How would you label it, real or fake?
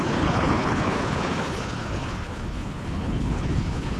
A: fake